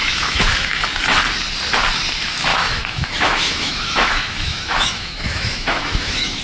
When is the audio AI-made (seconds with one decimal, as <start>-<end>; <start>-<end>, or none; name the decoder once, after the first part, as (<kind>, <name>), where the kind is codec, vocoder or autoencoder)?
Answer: 0.0-0.8 (autoencoder, DAC-VAE); 2.5-6.4